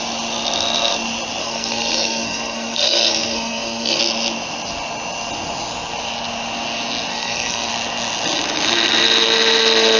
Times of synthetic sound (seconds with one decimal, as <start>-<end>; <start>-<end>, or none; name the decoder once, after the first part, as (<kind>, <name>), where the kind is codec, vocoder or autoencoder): 1.4-4.0 (codec, SNAC); 7.1-7.7